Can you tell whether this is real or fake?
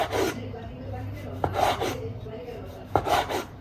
fake